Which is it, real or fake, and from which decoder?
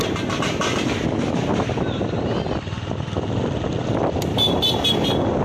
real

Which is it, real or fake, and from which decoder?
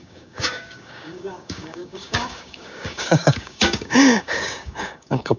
fake, codec, DAC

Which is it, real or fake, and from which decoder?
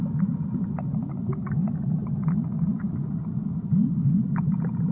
real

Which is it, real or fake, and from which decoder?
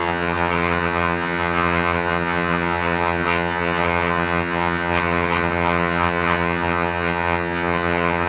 fake, vocoder, HiFi-GAN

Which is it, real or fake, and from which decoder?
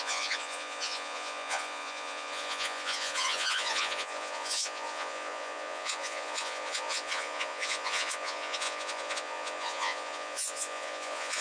fake, vocoder, Vocos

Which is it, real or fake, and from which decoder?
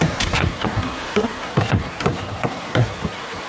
fake, codec, SNAC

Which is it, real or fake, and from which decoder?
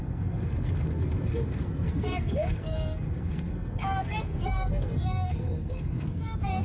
fake, codec, SNAC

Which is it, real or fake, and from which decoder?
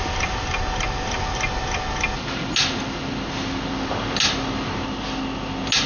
real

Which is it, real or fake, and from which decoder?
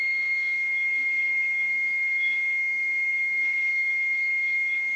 fake, codec, SNAC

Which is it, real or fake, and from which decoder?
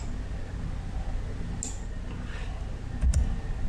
real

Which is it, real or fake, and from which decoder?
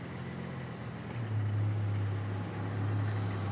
real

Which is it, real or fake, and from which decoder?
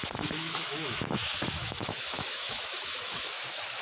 fake, autoencoder, DAC-VAE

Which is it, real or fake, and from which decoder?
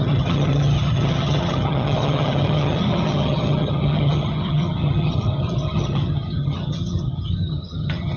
fake, vocoder, HiFi-GAN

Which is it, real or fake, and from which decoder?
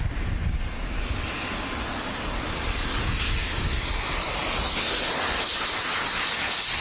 real